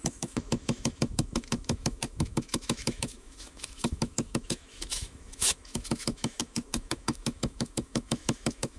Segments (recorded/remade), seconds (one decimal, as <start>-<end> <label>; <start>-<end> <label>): 0.0-8.8 remade